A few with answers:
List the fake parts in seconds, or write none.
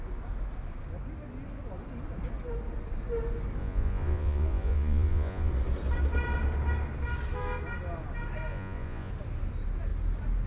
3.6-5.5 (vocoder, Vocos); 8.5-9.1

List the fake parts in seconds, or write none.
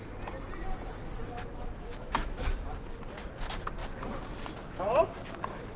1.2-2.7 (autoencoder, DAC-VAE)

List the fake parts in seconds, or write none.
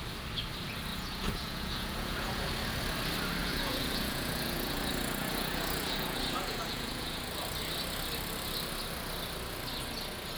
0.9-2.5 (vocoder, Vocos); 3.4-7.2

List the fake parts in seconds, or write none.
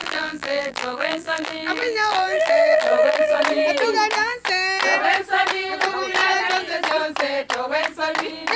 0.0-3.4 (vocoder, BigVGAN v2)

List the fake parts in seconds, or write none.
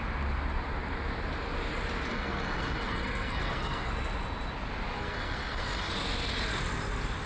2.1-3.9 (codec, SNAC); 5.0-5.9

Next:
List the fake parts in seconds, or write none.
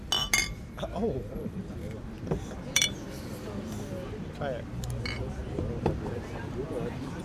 0.4-4.0 (vocoder, BigVGAN v2); 5.4-7.2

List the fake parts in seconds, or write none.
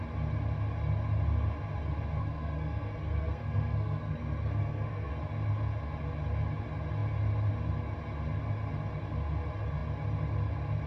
2.2-5.1 (codec, SNAC)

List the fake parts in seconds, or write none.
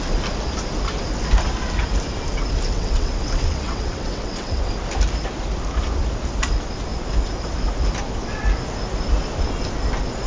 2.7-4.7 (vocoder, WaveNeXt)